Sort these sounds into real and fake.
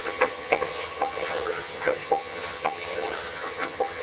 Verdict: fake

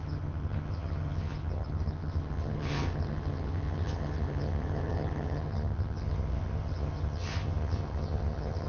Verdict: fake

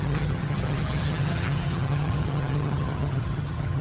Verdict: fake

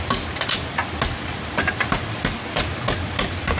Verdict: real